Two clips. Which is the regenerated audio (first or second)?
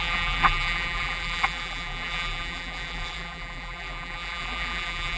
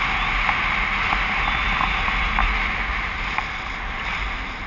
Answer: first